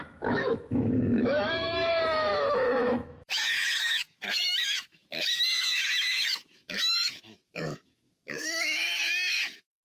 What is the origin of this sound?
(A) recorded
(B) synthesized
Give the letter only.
B